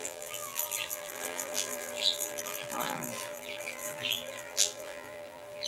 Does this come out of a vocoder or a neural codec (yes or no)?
yes